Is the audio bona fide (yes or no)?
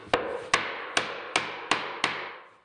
yes